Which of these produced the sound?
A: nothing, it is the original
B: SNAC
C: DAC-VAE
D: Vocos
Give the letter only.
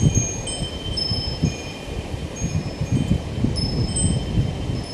A